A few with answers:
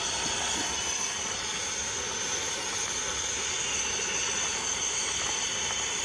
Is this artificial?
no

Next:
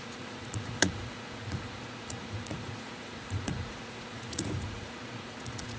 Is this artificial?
yes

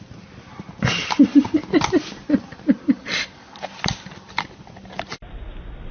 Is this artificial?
no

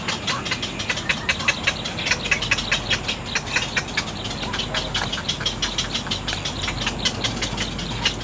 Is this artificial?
no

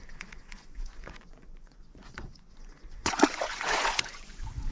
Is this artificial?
yes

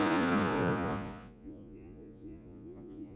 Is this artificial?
yes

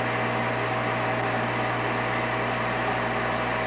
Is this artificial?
no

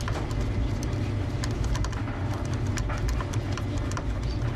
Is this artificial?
no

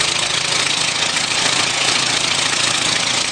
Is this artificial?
yes